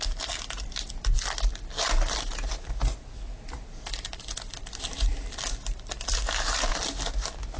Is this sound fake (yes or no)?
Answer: no